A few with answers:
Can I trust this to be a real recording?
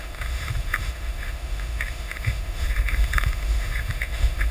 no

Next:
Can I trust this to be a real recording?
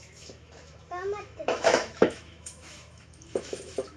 no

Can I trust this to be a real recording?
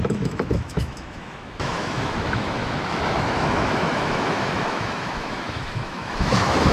no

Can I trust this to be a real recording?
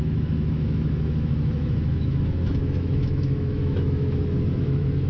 no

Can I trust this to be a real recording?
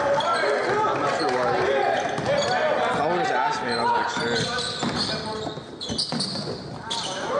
yes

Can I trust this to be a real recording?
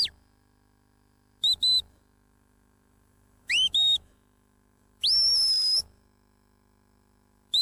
no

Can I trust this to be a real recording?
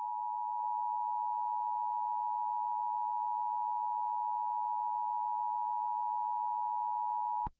yes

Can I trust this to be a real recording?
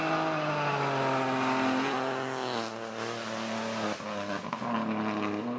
yes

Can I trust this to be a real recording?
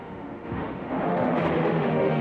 no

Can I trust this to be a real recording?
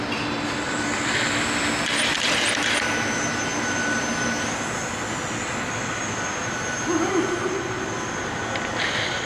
yes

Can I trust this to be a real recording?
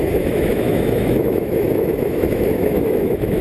no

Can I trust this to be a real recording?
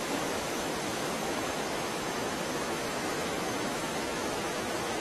no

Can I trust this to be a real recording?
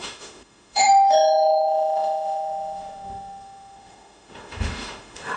no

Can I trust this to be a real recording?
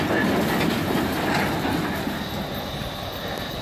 yes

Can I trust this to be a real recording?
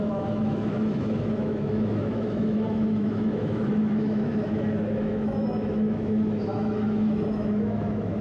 no